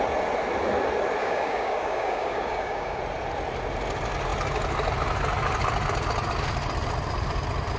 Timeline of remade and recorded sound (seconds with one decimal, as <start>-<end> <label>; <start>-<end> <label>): 0.0-1.2 recorded; 1.2-3.0 remade; 3.0-7.8 recorded